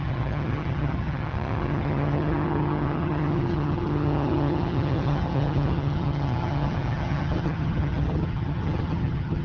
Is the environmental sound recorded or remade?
remade